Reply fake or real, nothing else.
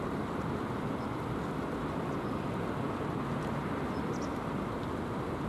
real